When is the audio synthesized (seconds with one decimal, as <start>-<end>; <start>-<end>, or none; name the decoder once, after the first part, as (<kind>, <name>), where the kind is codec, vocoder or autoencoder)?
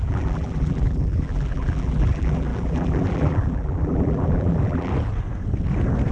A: 0.0-4.9 (vocoder, BigVGAN v2)